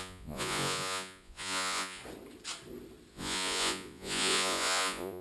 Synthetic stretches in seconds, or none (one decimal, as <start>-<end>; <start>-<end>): 0.0-2.0; 3.1-5.2